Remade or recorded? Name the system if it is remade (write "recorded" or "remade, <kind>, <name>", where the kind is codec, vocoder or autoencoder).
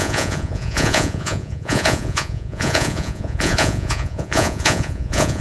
remade, vocoder, Vocos